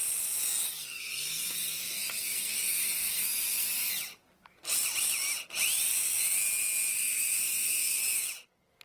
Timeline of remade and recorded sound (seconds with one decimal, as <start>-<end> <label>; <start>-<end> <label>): 0.0-0.8 recorded; 0.8-3.9 remade; 3.9-6.9 recorded; 6.9-8.0 remade; 8.0-8.8 recorded

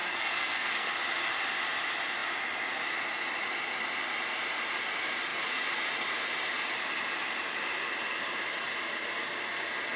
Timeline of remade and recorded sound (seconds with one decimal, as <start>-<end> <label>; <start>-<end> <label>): 0.0-0.9 remade; 0.9-10.0 recorded